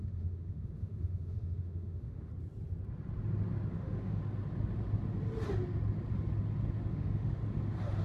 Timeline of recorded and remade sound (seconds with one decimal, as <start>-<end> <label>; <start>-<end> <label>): 0.0-2.3 remade; 2.3-3.7 recorded; 3.7-4.2 remade; 4.2-6.9 recorded; 6.9-7.4 remade; 7.4-8.0 recorded